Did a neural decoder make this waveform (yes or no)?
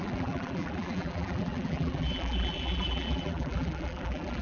yes